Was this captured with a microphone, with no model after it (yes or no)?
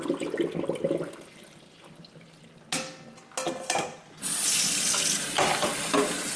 yes